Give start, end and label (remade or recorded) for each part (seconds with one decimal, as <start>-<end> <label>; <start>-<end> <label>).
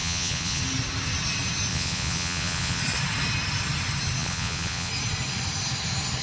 0.0-0.6 remade; 0.6-1.7 recorded; 1.7-2.8 remade; 2.8-4.2 recorded; 4.2-4.9 remade; 4.9-6.2 recorded